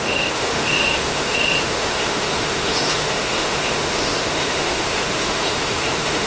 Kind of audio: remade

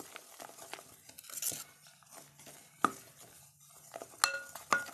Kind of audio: recorded